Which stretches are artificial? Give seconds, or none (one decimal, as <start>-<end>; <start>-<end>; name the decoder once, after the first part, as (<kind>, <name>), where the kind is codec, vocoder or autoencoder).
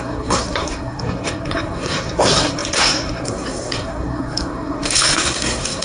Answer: 0.0-5.8 (codec, SNAC)